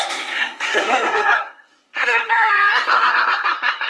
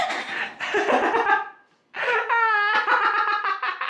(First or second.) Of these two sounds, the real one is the second